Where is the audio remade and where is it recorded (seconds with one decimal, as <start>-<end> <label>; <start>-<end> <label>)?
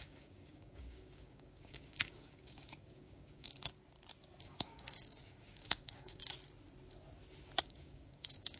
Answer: 0.0-3.7 remade; 3.7-4.4 recorded; 4.4-6.2 remade; 6.2-7.6 recorded; 7.6-8.6 remade